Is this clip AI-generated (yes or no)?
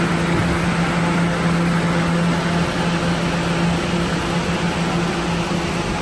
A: no